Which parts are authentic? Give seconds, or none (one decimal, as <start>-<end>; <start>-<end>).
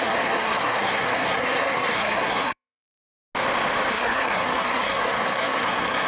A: 3.0-3.9